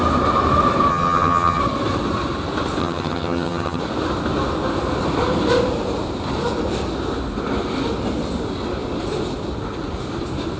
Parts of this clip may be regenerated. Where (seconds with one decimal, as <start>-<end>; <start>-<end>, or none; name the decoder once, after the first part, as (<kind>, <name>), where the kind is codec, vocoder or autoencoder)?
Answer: 0.9-1.6 (vocoder, HiFi-GAN); 2.8-3.8

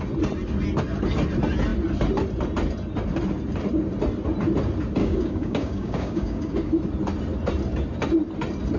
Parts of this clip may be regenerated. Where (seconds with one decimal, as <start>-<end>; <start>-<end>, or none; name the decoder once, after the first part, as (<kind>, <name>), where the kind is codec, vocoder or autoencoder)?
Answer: 5.0-6.7 (codec, DAC)